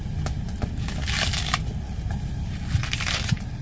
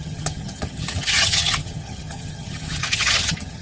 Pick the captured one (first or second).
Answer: first